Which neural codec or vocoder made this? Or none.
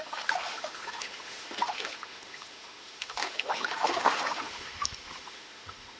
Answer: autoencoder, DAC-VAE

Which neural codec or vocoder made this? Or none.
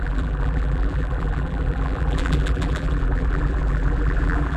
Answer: vocoder, BigVGAN v2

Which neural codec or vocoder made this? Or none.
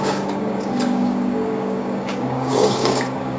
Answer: codec, DAC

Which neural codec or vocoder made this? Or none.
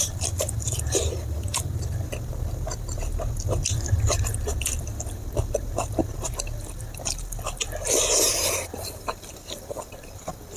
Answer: vocoder, BigVGAN v2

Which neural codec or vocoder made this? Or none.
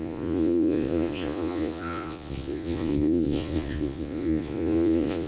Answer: vocoder, Vocos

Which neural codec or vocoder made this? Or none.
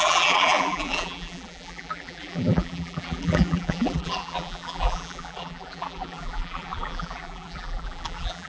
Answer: vocoder, BigVGAN v2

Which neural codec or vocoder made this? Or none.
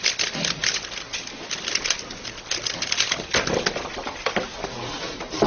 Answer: none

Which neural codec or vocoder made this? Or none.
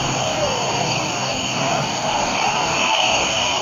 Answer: codec, DAC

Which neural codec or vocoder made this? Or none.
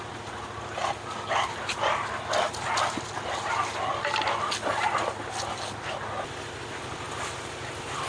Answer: none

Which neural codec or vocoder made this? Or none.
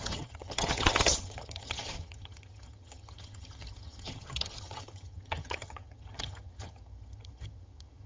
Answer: vocoder, HiFi-GAN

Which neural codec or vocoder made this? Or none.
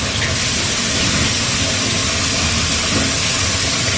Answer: none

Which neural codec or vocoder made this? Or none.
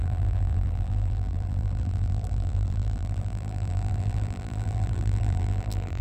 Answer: vocoder, BigVGAN v2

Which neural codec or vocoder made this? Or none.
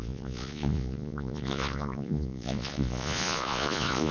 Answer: vocoder, Vocos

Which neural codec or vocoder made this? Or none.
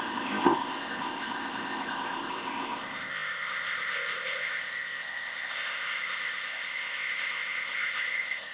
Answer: codec, ZipCodec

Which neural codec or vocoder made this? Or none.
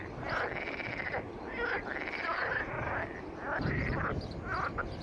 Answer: none